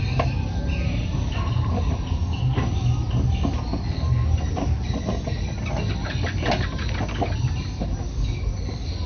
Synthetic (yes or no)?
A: no